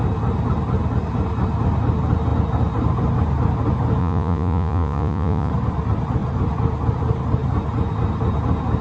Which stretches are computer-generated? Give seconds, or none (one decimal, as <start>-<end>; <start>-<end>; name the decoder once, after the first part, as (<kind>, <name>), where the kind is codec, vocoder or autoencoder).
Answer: 4.0-5.5 (vocoder, Vocos)